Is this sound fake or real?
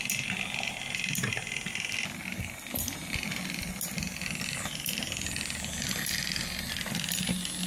real